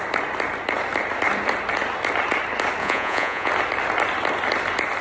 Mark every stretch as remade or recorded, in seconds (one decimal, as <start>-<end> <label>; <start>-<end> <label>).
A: 0.0-2.8 recorded; 2.8-3.5 remade; 3.5-5.0 recorded